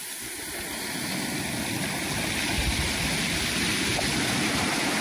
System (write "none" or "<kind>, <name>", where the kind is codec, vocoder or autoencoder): none